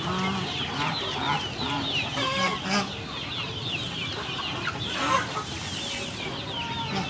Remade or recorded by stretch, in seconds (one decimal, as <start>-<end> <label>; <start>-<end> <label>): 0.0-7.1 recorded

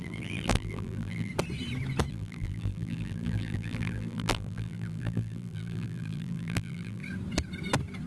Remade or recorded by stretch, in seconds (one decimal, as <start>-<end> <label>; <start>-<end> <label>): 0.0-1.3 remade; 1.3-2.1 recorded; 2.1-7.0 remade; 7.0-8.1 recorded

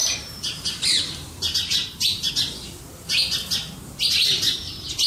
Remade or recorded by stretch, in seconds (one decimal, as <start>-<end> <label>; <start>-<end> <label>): 0.0-2.3 remade; 2.3-5.1 recorded